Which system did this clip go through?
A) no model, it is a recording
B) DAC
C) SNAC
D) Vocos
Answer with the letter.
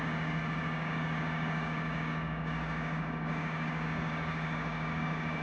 B